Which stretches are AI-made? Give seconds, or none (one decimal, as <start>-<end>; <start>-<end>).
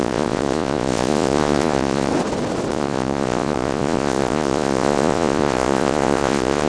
0.0-2.1; 2.7-6.7